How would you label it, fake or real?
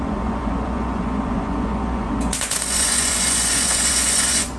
fake